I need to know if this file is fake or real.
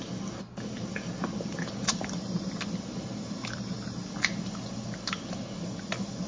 real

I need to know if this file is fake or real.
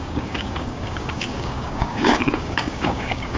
fake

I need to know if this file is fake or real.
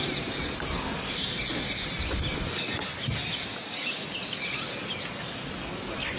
real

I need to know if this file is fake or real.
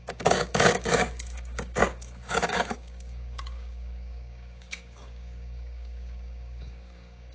fake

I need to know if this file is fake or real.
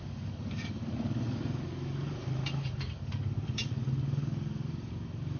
fake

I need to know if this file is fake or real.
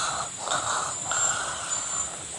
real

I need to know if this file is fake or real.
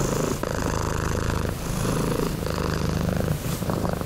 real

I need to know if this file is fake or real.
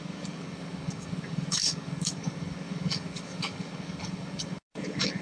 fake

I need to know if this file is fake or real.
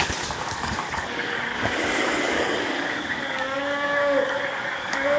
fake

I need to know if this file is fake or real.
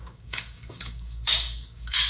fake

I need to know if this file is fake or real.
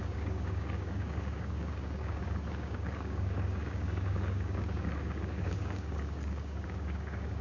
fake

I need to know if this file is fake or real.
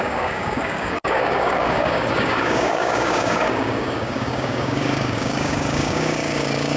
fake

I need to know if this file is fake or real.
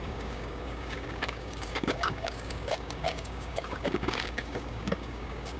fake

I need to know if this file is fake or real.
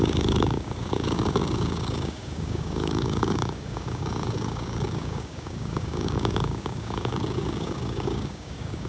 fake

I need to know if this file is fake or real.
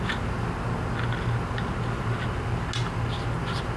real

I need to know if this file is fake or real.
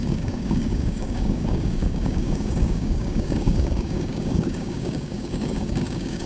fake